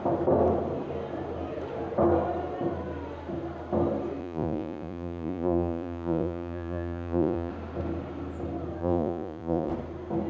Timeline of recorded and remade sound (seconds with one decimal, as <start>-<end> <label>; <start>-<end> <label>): 0.0-4.2 recorded; 4.2-7.5 remade; 7.5-8.8 recorded; 8.8-9.7 remade; 9.7-10.3 recorded